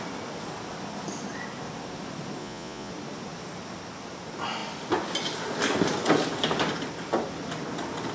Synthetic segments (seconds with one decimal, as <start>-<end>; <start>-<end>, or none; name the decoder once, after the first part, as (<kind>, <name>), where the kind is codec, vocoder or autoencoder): 2.4-2.9 (vocoder, Vocos)